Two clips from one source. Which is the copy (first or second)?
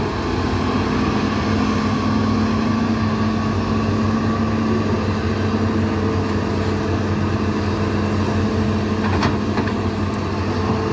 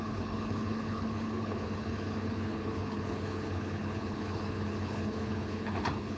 second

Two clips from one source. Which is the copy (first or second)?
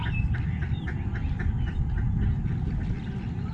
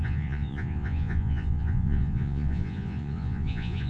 second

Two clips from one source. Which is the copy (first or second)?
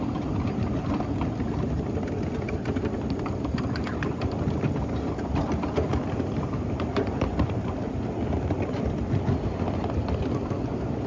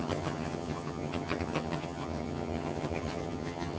second